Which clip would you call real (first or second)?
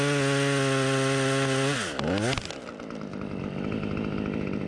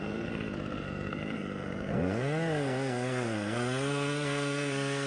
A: first